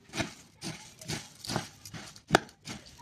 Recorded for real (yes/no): no